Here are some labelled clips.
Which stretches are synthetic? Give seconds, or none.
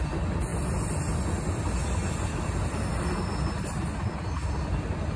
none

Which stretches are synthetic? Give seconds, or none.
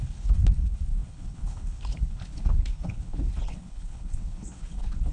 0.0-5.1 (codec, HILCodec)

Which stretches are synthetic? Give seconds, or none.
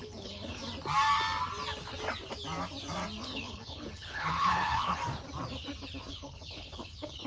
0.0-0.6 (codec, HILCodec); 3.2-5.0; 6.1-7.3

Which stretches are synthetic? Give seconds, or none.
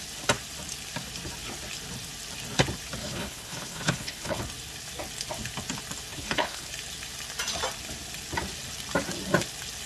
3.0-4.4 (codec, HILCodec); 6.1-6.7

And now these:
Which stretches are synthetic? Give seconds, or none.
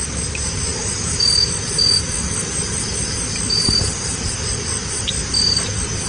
none